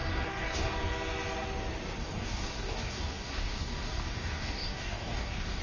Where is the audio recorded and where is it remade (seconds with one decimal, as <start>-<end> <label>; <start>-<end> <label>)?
0.0-0.7 remade; 0.7-2.0 recorded; 2.0-5.6 remade